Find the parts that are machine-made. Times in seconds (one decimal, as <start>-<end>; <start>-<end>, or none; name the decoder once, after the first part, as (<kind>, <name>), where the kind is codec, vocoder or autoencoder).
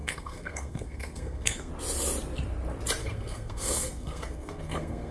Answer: 0.0-1.7 (codec, SNAC); 3.0-5.1